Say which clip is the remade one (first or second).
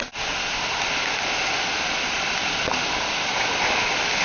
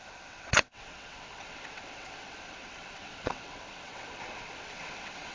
second